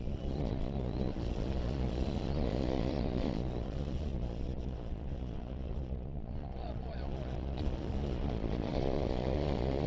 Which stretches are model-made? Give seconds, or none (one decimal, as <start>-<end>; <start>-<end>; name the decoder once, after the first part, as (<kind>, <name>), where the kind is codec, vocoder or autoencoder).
0.0-9.9 (vocoder, Vocos)